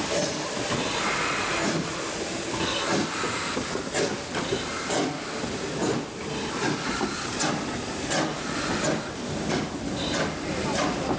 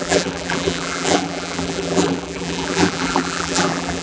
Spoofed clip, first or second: second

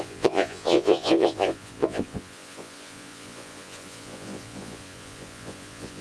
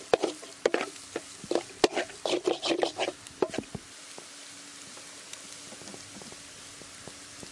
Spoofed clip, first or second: first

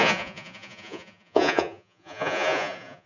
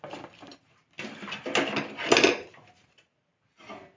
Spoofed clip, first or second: first